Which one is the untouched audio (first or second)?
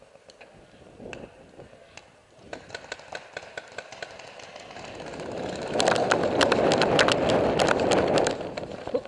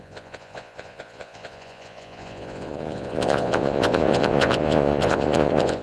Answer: first